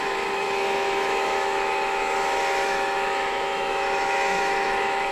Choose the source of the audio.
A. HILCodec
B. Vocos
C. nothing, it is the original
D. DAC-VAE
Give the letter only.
D